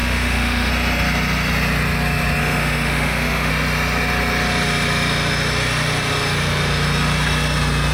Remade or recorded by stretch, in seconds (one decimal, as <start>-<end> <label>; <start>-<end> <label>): 0.0-0.7 remade; 0.7-2.4 recorded; 2.4-3.5 remade; 3.5-7.9 recorded